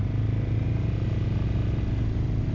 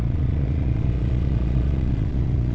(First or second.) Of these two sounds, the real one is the first